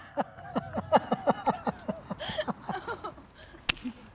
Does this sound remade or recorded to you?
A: recorded